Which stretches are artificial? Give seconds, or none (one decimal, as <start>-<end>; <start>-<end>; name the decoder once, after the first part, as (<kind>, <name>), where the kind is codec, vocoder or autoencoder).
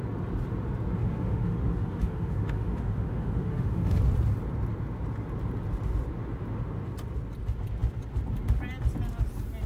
1.0-4.0 (autoencoder, DAC-VAE)